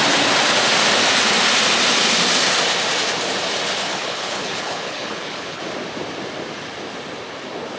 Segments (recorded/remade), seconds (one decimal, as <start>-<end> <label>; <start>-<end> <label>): 0.0-3.9 recorded; 3.9-5.6 remade; 5.6-7.8 recorded